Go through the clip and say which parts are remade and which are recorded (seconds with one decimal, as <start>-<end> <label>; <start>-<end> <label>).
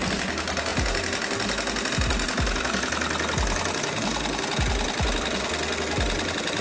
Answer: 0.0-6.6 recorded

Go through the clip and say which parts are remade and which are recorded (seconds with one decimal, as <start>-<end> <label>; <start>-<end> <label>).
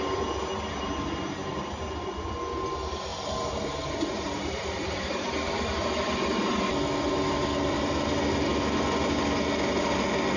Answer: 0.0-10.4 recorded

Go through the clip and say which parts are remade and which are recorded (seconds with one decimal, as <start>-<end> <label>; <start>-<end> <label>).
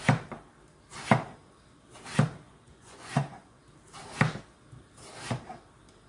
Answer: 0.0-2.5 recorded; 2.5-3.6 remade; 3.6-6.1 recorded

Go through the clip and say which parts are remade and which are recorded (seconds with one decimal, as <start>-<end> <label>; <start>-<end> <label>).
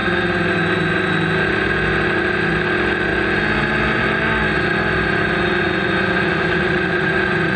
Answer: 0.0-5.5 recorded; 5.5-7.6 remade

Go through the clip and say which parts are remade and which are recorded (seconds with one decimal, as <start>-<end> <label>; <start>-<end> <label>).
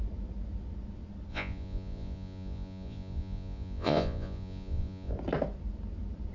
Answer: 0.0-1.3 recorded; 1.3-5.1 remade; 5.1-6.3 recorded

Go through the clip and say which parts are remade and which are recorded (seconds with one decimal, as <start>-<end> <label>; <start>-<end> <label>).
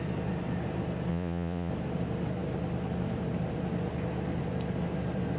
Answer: 0.0-1.1 recorded; 1.1-1.7 remade; 1.7-5.4 recorded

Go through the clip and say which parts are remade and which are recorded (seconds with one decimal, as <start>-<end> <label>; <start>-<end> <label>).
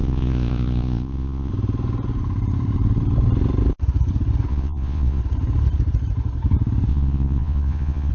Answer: 0.0-1.5 remade; 1.5-4.5 recorded; 4.5-5.2 remade; 5.2-6.9 recorded; 6.9-8.1 remade